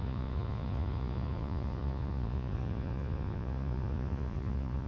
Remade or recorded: remade